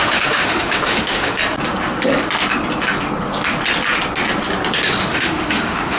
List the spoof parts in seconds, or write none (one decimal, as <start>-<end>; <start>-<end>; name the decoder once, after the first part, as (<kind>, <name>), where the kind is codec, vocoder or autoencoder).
0.0-1.4 (autoencoder, DAC-VAE); 5.0-6.0